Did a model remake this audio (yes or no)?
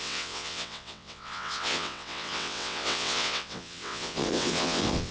yes